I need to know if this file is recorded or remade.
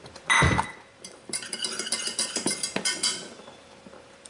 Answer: remade